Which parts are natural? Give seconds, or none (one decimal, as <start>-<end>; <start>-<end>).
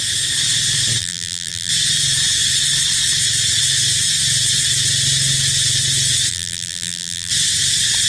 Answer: 0.0-1.0; 1.7-6.3; 7.3-8.1